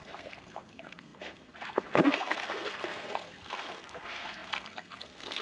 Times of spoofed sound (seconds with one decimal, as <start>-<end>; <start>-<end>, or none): 0.0-5.4